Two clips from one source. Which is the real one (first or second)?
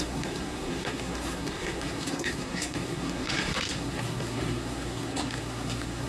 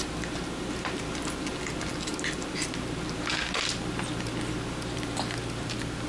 second